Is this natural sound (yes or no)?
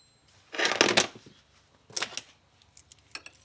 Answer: yes